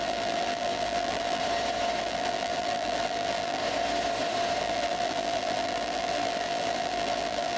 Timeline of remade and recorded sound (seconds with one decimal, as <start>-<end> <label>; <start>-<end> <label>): 0.0-1.4 remade; 1.4-2.0 recorded; 2.0-3.6 remade; 3.6-4.6 recorded; 4.6-7.6 remade